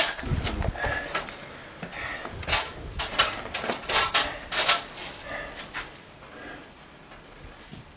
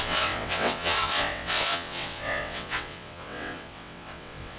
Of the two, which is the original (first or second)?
first